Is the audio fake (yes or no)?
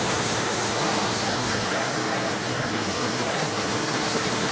yes